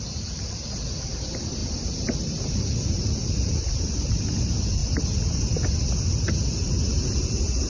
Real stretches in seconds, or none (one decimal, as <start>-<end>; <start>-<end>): 4.8-6.0